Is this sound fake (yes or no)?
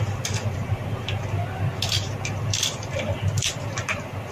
no